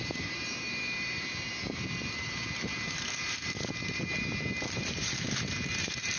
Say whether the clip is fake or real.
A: fake